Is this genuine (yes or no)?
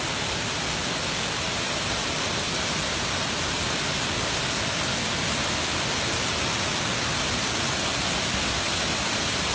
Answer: yes